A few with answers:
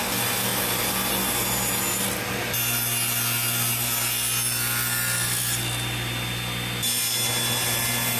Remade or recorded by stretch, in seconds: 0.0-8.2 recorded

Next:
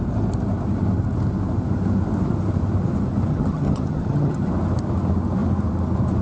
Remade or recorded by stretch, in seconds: 0.0-3.3 recorded; 3.3-4.5 remade; 4.5-6.2 recorded

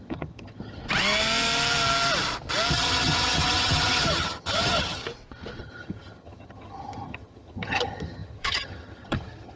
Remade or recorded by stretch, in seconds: 0.0-0.8 remade; 0.8-2.7 recorded; 2.7-5.0 remade; 5.0-5.6 recorded; 5.6-9.6 remade

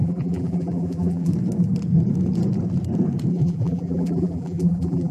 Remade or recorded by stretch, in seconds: 0.0-1.3 remade; 1.3-3.3 recorded; 3.3-5.1 remade

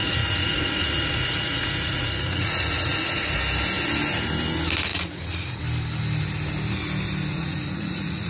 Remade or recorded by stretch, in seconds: 0.0-3.4 remade; 3.4-4.9 recorded; 4.9-5.6 remade; 5.6-7.3 recorded; 7.3-8.3 remade

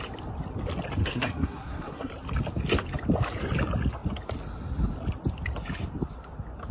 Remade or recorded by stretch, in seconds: 0.0-1.0 recorded; 1.0-2.1 remade; 2.1-6.7 recorded

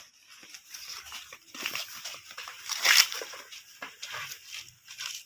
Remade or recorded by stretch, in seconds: 0.0-0.4 recorded; 0.4-3.5 remade; 3.5-5.3 recorded

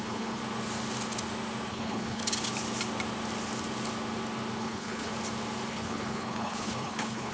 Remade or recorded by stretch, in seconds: 0.0-0.4 remade; 0.4-1.7 recorded; 1.7-2.2 remade; 2.2-4.6 recorded; 4.6-5.1 remade; 5.1-5.7 recorded; 5.7-7.3 remade